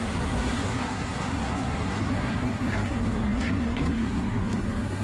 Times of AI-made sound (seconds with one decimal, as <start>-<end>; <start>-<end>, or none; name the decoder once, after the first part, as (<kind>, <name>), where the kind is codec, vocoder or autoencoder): 0.0-5.0 (codec, SNAC)